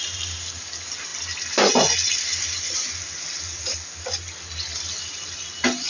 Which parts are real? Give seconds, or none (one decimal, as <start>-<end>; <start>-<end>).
0.0-5.9